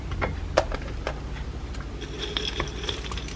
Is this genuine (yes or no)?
yes